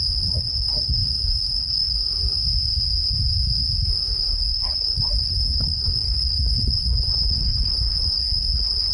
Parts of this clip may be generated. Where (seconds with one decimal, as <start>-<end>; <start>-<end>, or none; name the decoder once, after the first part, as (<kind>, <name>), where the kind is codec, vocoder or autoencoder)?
0.0-2.0 (codec, HILCodec); 4.3-8.9